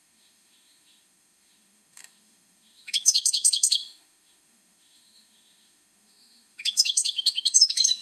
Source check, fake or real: fake